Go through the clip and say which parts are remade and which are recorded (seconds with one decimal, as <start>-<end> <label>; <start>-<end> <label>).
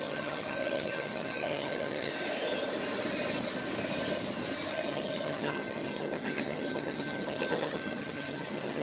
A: 0.0-2.1 remade; 2.1-4.7 recorded; 4.7-8.8 remade